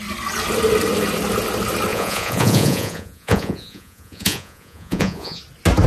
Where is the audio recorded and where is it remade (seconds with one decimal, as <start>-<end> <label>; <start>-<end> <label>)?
0.0-1.9 recorded; 1.9-5.4 remade; 5.4-5.9 recorded